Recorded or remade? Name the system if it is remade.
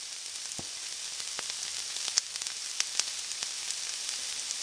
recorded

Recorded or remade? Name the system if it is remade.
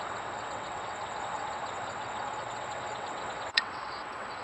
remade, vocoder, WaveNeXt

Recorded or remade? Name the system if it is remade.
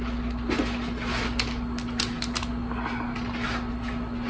recorded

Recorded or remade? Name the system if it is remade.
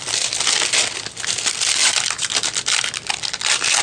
recorded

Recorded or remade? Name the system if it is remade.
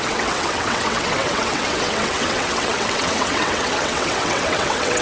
remade, vocoder, WaveNeXt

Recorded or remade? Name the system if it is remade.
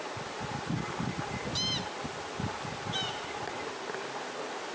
recorded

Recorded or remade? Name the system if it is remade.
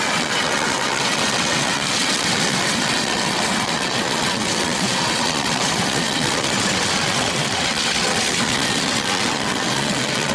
remade, vocoder, WaveNeXt